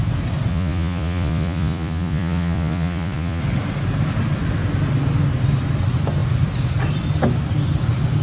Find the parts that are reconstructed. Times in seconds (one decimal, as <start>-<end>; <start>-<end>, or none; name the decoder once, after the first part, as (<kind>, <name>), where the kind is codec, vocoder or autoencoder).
0.5-3.4 (vocoder, Vocos)